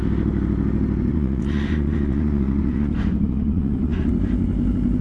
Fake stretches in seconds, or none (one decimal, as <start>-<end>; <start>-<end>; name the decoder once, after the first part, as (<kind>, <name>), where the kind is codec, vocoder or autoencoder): 1.1-4.1 (vocoder, Vocos)